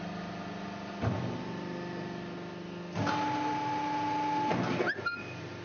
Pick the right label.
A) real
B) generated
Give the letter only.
A